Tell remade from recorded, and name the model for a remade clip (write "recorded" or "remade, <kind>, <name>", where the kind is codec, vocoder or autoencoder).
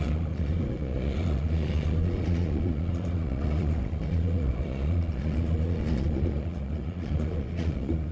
remade, vocoder, Vocos